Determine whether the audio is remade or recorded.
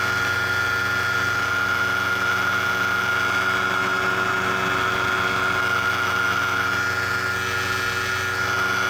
recorded